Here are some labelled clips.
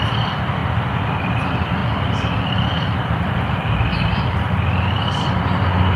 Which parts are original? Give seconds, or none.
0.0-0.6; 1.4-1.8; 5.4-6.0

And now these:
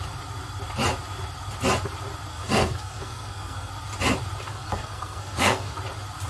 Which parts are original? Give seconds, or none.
0.0-2.3; 3.7-4.5; 5.8-6.3